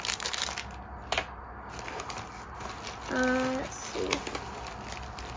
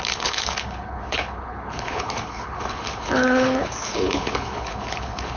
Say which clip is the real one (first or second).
first